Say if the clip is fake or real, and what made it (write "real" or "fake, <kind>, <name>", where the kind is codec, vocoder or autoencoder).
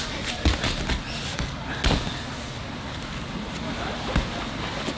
real